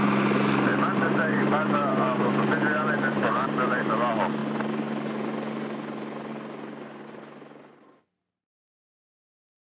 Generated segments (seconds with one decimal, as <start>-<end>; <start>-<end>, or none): 0.7-3.9